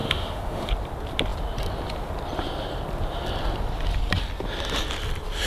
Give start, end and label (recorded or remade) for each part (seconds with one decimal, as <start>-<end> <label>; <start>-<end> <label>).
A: 0.0-0.7 remade; 0.7-5.5 recorded